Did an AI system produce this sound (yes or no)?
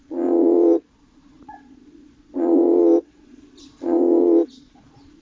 yes